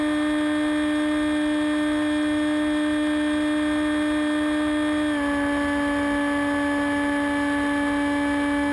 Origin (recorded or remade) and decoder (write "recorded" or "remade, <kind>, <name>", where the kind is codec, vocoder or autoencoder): recorded